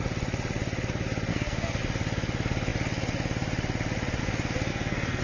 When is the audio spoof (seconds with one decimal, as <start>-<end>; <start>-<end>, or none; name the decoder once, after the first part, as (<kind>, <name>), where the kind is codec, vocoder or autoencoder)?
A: 1.3-1.8 (codec, SNAC); 4.7-5.2